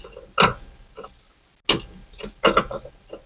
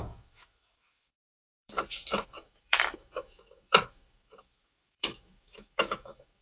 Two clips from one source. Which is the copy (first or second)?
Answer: second